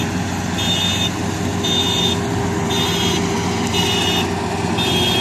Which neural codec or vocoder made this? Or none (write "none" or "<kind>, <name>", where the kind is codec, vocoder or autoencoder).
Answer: none